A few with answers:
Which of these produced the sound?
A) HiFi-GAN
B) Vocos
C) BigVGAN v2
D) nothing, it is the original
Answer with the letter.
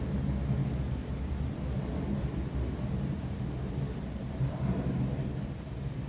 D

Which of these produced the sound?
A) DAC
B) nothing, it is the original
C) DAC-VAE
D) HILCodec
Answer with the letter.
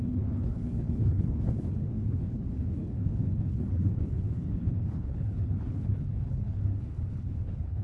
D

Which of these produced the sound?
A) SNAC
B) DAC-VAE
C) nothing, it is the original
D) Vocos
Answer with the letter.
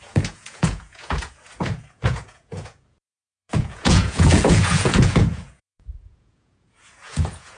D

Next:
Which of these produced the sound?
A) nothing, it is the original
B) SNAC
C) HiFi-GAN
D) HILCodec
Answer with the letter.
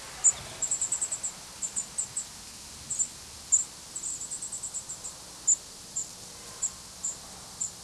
A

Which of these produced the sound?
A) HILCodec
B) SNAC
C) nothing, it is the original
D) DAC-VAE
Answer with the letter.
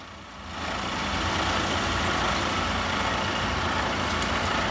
C